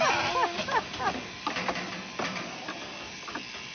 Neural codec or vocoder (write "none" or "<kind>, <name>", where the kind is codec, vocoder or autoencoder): none